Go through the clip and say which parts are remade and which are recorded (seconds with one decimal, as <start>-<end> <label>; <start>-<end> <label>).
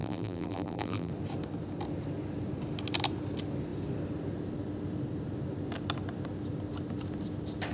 0.0-1.1 remade; 1.1-7.7 recorded